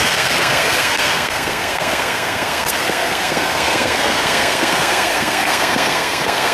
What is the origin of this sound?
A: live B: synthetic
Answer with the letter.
B